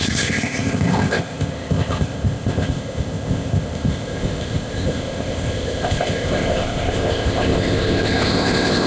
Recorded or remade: remade